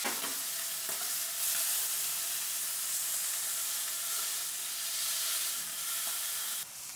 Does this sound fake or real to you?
real